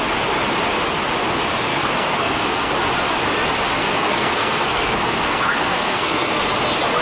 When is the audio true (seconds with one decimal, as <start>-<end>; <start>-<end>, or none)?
0.0-1.7; 2.7-3.8; 6.4-7.0